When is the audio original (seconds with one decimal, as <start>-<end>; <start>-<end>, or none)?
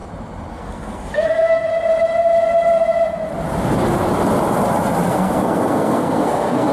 0.0-0.5; 1.7-5.1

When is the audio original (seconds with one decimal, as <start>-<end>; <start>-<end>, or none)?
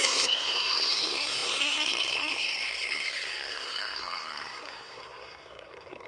none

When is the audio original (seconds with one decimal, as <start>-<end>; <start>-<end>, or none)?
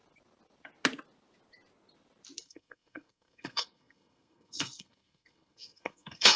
0.0-2.4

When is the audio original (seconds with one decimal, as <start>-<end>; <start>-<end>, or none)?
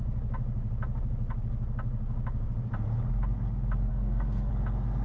0.0-3.9; 4.5-5.0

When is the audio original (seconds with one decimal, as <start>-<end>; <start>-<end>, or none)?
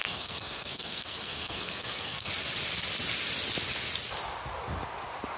2.3-5.4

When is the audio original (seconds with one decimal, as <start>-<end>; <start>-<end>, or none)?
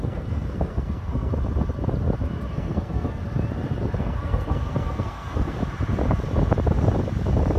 1.3-2.5; 3.2-4.0; 5.6-7.6